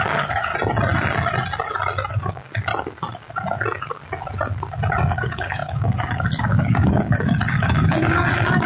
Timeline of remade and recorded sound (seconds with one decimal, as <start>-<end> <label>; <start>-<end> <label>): 0.0-0.5 remade; 0.5-2.1 recorded; 2.1-2.7 remade; 2.7-5.1 recorded; 5.1-8.7 remade